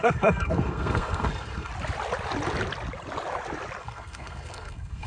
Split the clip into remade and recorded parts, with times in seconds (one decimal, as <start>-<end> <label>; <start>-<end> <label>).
0.0-1.7 remade; 1.7-3.8 recorded; 3.8-5.1 remade